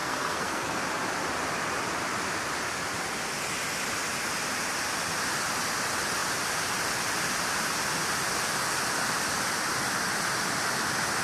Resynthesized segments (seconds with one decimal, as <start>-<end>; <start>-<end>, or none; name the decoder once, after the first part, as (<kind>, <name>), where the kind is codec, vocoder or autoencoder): 0.0-0.8 (codec, SNAC)